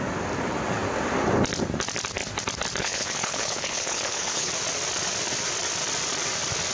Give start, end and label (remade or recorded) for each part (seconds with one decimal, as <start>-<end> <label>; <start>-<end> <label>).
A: 0.0-2.8 recorded; 2.8-4.5 remade; 4.5-6.7 recorded